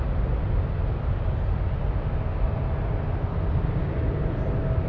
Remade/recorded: recorded